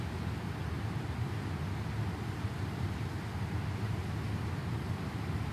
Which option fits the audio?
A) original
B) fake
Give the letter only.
A